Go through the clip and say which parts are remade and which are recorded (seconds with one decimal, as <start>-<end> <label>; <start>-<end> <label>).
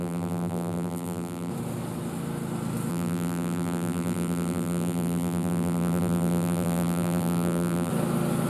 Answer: 0.0-1.5 remade; 1.5-2.9 recorded; 2.9-7.9 remade; 7.9-8.5 recorded